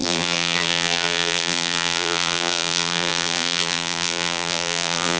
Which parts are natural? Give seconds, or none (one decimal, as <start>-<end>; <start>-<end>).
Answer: none